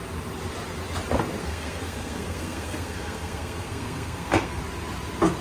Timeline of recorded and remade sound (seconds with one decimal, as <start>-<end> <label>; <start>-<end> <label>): 0.0-1.4 recorded; 1.4-4.6 remade; 4.6-5.4 recorded